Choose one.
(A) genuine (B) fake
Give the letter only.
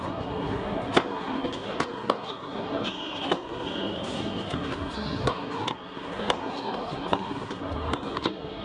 B